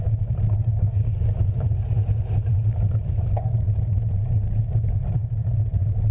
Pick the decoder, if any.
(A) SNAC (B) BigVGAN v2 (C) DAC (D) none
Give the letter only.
B